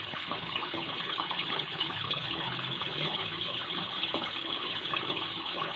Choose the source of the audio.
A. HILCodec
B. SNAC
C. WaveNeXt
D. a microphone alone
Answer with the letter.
A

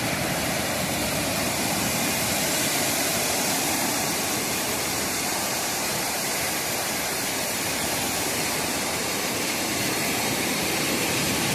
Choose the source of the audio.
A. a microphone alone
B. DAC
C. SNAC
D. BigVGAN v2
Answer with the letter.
D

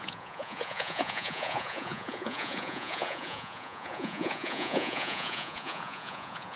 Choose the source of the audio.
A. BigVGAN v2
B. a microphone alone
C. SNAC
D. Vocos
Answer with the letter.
D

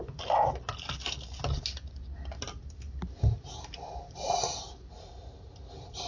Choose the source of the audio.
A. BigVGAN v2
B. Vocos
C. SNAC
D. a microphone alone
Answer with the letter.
D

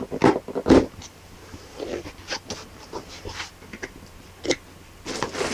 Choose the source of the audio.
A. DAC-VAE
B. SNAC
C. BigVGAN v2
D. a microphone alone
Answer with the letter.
D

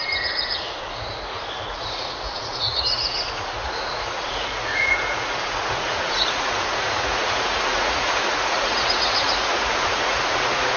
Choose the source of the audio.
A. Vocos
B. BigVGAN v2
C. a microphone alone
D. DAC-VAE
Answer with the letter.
A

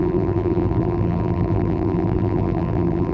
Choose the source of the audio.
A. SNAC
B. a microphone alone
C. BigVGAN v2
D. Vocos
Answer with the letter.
C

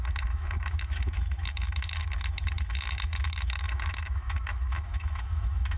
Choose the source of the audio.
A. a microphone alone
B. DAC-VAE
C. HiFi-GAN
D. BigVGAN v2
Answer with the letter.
B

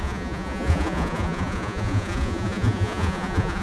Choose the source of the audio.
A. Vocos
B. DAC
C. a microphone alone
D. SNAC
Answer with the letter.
A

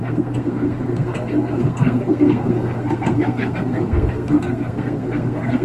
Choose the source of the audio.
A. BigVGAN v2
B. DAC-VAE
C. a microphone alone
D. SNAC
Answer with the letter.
D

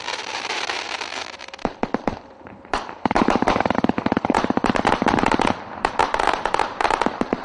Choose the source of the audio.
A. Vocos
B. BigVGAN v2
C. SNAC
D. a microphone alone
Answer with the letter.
B